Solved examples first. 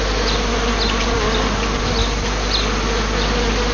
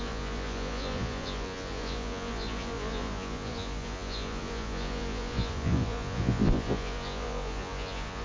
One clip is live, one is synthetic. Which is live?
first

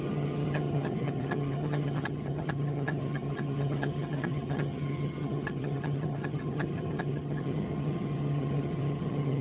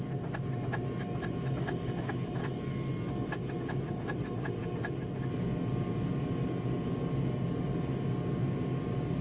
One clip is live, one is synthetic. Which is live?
second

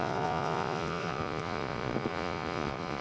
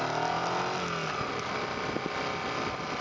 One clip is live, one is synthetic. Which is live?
second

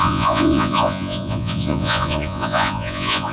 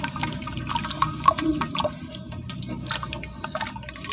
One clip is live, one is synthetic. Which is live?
second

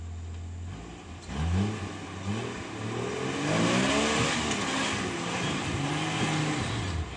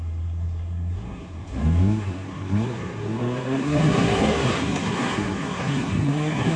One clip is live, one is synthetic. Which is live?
first